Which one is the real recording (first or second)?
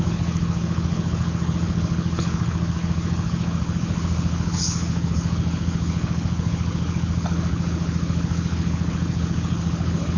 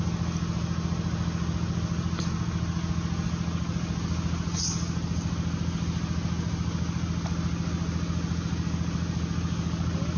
second